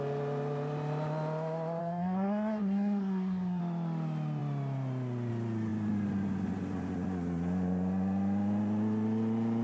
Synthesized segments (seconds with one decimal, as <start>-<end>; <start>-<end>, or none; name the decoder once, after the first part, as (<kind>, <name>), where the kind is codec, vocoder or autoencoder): 1.8-3.6 (codec, SNAC)

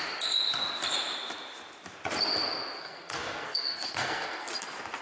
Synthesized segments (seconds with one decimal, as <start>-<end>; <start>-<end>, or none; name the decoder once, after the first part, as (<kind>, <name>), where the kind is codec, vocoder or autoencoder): 2.8-4.5 (codec, SNAC)

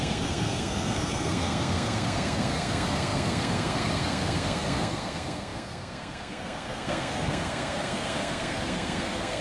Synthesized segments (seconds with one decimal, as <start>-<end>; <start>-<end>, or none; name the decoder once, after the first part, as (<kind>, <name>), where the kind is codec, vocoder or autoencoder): 0.0-9.4 (codec, SNAC)

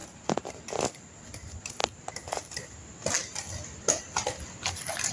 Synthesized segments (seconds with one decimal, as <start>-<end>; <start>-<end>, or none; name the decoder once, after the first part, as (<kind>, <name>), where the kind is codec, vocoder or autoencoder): none